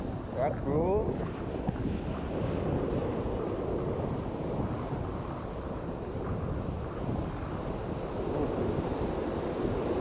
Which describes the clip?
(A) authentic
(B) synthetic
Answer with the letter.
A